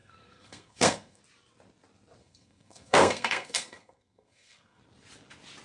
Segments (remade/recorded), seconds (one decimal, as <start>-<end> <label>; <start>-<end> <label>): 0.0-1.2 remade; 1.2-2.2 recorded; 2.2-4.8 remade; 4.8-5.6 recorded

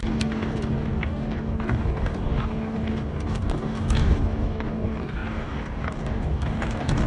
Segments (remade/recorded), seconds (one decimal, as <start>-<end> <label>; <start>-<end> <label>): 0.0-7.1 remade

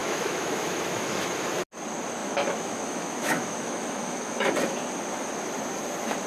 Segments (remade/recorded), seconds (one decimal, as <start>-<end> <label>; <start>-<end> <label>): 0.0-1.3 remade; 1.3-2.2 recorded; 2.2-4.5 remade; 4.5-6.3 recorded

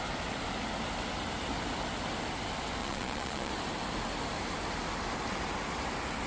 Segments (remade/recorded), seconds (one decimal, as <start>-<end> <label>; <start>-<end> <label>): 0.0-2.8 recorded; 2.8-3.5 remade; 3.5-6.3 recorded

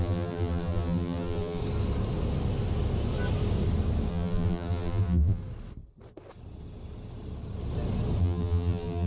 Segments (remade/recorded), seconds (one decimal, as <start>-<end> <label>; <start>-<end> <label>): 0.0-1.6 remade; 1.6-4.1 recorded; 4.1-5.4 remade; 5.4-8.2 recorded; 8.2-9.1 remade

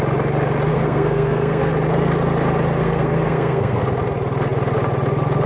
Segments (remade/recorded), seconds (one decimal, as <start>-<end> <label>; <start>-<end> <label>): 0.0-0.7 recorded; 0.7-1.7 remade; 1.7-2.8 recorded; 2.8-3.8 remade; 3.8-5.5 recorded